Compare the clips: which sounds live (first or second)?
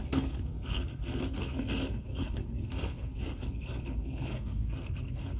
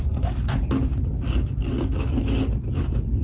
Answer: second